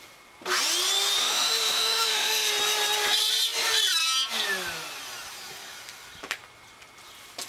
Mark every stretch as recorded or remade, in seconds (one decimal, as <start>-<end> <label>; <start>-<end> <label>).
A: 0.0-1.2 recorded; 1.2-2.5 remade; 2.5-7.5 recorded